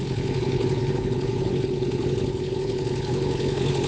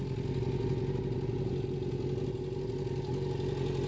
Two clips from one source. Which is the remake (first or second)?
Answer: first